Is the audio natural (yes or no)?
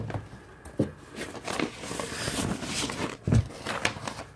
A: yes